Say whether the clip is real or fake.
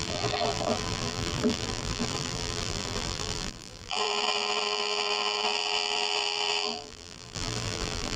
fake